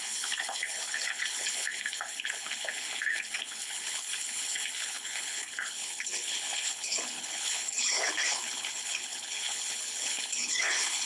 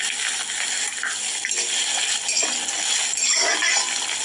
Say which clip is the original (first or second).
second